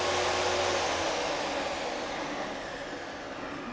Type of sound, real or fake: real